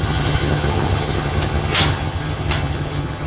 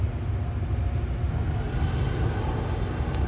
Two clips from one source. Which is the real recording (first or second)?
second